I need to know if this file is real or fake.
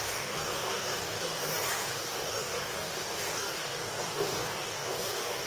fake